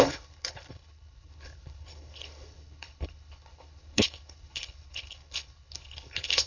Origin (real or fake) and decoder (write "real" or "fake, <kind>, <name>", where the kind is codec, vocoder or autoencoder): fake, codec, HILCodec